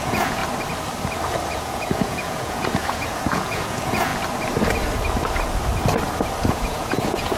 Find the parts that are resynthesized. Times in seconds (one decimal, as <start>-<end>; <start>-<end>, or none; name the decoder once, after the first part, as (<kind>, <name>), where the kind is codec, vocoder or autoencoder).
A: 0.0-0.4 (vocoder, Vocos); 1.5-4.1; 6.5-7.4